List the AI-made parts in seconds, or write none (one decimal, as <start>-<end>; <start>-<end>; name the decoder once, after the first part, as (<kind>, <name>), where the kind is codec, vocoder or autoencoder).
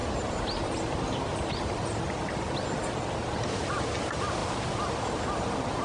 none